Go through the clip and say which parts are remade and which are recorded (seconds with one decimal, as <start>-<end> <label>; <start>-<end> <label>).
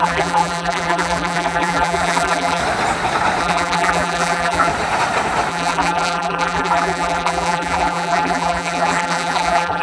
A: 0.0-2.6 remade; 2.6-3.4 recorded; 3.4-4.7 remade; 4.7-5.5 recorded; 5.5-9.8 remade